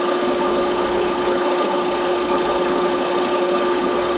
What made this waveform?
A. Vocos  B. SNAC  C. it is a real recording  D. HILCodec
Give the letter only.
D